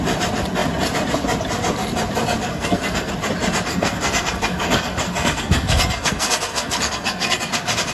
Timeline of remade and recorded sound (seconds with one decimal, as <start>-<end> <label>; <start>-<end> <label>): 0.0-2.5 recorded; 2.5-3.1 remade; 3.1-3.7 recorded; 3.7-7.5 remade; 7.5-7.9 recorded